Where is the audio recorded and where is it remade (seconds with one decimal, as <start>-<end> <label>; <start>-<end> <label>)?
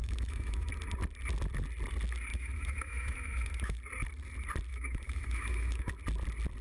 0.0-0.7 remade; 0.7-2.3 recorded; 2.3-3.8 remade; 3.8-4.7 recorded; 4.7-5.9 remade; 5.9-6.6 recorded